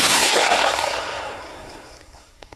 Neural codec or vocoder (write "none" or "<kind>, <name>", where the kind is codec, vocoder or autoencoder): codec, SNAC